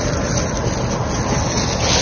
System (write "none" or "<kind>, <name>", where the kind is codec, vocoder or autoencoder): none